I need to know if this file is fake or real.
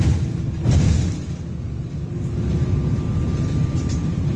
real